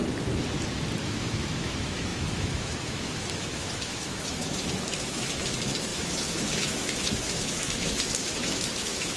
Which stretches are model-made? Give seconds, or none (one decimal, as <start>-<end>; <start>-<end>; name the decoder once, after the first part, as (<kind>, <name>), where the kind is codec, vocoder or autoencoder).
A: 1.0-9.2 (autoencoder, DAC-VAE)